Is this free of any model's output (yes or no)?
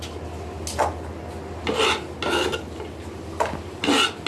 yes